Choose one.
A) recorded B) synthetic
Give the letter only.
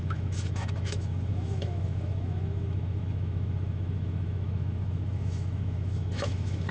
B